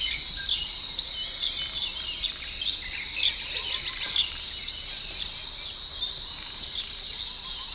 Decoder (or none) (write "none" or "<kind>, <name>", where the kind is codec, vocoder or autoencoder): none